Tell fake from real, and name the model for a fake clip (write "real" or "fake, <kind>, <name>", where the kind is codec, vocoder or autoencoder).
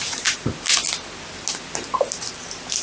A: real